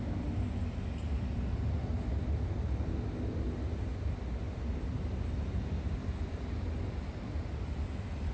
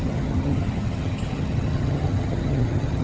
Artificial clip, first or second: second